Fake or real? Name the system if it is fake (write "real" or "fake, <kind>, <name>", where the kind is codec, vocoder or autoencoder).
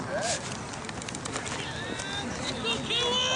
real